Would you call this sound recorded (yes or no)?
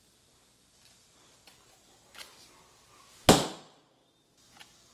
yes